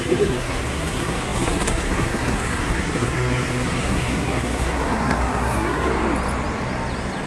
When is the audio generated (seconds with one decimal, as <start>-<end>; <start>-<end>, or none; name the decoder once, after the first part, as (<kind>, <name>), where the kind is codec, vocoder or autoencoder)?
0.0-5.9 (codec, SNAC)